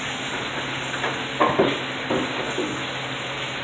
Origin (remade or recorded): recorded